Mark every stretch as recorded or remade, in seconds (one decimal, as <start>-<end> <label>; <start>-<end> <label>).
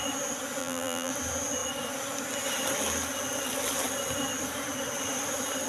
0.0-0.6 recorded; 0.6-1.1 remade; 1.1-5.7 recorded